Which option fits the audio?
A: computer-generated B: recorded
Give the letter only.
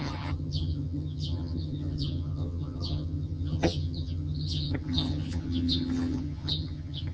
A